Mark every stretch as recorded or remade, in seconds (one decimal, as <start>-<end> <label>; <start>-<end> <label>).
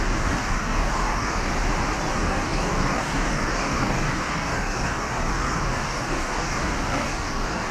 0.0-1.5 remade; 1.5-2.1 recorded; 2.1-7.7 remade